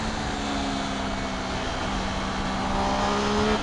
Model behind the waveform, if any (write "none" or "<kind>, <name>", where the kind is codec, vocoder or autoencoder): none